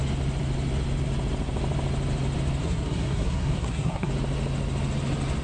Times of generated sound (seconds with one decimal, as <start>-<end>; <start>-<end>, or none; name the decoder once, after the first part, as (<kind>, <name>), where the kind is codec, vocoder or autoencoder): 2.6-4.1 (codec, SNAC)

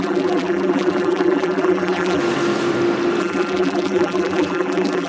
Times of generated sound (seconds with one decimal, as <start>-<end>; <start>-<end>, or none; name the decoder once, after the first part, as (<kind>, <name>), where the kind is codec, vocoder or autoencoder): 0.0-2.2 (vocoder, BigVGAN v2); 3.2-5.1

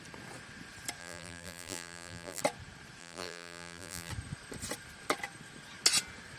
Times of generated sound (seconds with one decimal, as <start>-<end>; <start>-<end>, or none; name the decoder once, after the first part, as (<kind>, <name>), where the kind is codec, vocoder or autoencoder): 1.0-2.4 (vocoder, BigVGAN v2); 3.0-4.1

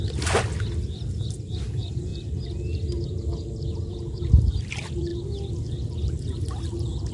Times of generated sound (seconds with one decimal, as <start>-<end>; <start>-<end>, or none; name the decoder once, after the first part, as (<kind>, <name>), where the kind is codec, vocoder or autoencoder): none

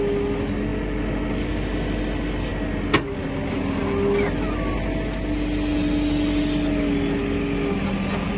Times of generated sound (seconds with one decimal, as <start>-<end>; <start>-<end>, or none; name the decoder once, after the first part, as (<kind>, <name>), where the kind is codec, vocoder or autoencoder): none